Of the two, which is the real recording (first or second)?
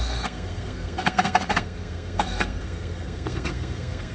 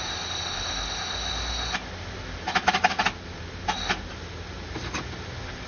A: second